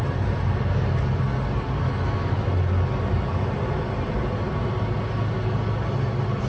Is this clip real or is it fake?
real